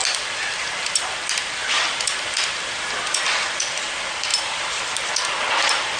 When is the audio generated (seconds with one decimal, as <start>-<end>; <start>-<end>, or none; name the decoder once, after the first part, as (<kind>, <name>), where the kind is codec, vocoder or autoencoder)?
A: 4.3-4.8 (vocoder, BigVGAN v2)